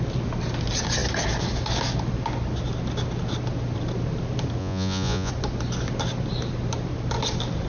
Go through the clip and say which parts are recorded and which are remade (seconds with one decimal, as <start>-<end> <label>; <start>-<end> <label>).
0.0-4.6 recorded; 4.6-5.3 remade; 5.3-7.7 recorded